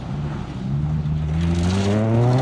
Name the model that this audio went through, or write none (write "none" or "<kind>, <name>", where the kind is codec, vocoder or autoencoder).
none